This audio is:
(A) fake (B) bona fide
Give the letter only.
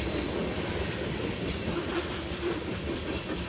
A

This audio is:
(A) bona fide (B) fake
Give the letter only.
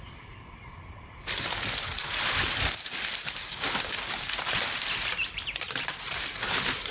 B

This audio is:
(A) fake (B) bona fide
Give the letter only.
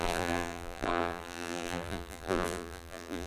A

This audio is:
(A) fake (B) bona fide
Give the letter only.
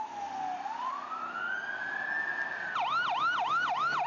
B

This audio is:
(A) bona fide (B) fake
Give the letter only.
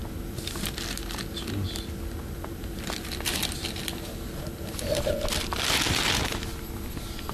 B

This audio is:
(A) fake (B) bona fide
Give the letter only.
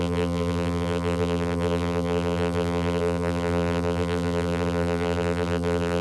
A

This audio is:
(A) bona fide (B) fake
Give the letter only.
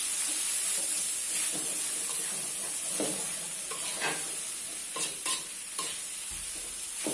A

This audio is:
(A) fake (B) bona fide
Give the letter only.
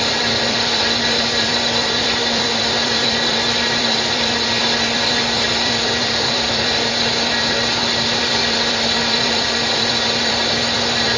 A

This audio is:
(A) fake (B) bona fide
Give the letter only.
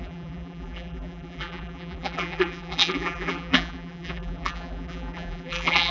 A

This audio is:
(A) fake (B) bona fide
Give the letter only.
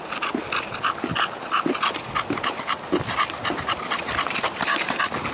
B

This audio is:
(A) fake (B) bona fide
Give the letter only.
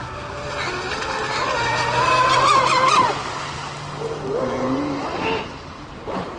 B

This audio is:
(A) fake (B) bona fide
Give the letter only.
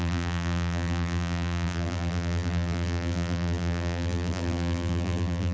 A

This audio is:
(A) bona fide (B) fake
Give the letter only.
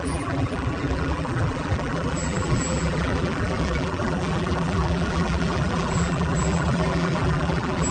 B